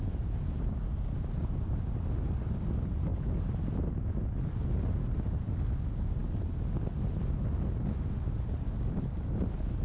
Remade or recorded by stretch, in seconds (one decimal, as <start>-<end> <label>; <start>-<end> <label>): 0.0-9.8 recorded